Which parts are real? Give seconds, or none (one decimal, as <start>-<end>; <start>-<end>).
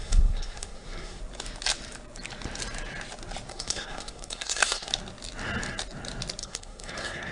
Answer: 1.2-3.5; 4.9-6.4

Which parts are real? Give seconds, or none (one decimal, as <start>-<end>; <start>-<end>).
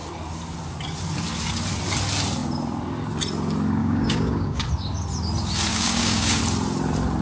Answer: 0.0-3.8; 4.6-5.7; 6.4-7.2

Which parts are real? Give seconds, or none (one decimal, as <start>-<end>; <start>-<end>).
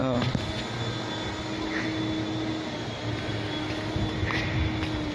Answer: 0.0-5.1